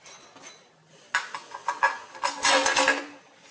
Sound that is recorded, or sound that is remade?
recorded